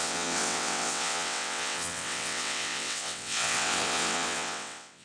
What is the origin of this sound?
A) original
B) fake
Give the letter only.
B